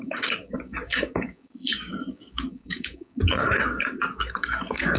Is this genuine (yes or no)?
no